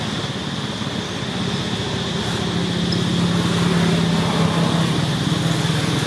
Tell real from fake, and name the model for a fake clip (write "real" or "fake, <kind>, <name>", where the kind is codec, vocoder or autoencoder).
real